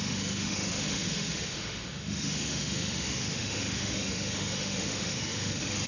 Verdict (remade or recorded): remade